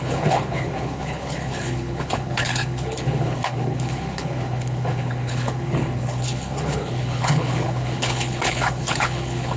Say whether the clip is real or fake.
fake